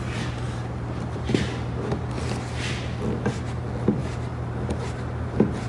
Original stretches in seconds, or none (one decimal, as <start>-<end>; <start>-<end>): 0.0-5.7